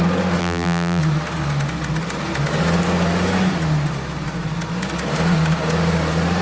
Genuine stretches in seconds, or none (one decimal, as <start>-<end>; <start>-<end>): 0.0-0.4; 1.0-6.4